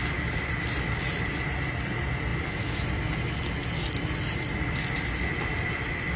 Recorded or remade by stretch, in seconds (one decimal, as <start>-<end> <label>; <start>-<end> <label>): 0.0-6.2 recorded